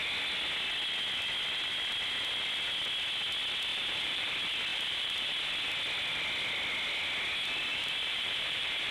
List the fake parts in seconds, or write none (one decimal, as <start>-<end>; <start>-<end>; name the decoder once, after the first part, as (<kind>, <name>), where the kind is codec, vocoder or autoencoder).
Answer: 3.7-4.3 (vocoder, BigVGAN v2); 4.7-5.5; 7.7-8.9